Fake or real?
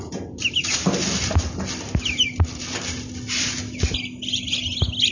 real